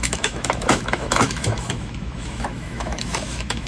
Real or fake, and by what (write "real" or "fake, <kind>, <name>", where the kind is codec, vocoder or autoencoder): fake, autoencoder, DAC-VAE